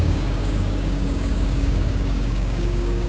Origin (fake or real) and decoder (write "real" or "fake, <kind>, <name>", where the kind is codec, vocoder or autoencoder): fake, codec, DAC